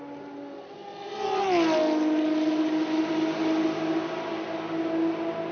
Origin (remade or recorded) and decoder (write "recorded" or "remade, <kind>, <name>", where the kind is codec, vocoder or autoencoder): recorded